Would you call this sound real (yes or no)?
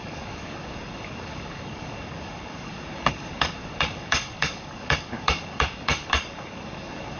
no